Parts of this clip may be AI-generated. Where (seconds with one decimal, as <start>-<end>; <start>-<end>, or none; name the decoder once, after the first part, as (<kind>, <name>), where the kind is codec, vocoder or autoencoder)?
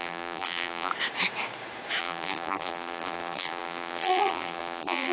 0.0-0.9 (vocoder, BigVGAN v2); 2.0-5.1